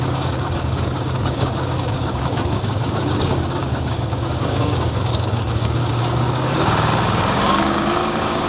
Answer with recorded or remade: remade